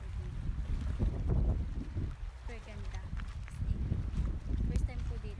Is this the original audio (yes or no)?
yes